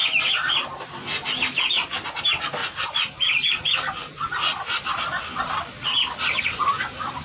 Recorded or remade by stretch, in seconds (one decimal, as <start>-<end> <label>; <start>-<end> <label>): 0.0-7.2 recorded